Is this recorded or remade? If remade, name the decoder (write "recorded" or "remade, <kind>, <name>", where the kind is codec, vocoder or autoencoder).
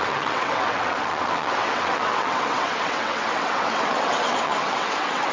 remade, vocoder, WaveNeXt